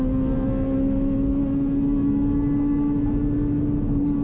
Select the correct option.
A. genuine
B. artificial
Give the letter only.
A